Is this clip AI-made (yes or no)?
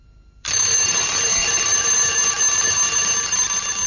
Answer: yes